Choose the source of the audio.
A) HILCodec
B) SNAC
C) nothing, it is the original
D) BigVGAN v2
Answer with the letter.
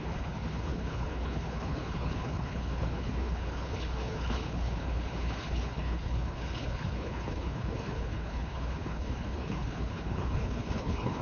A